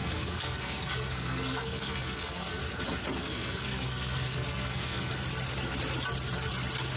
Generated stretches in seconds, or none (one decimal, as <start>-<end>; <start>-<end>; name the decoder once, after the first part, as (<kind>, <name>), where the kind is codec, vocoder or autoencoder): 0.0-2.6 (codec, SNAC); 3.2-5.1